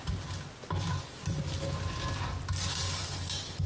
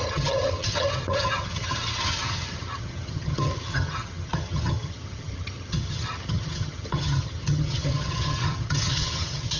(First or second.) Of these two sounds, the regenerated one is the second